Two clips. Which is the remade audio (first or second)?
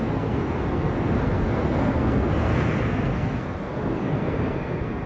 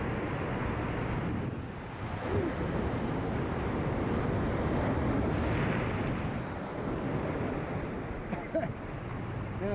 first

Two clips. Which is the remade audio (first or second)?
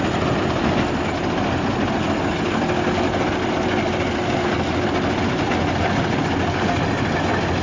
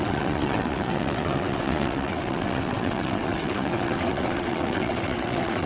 second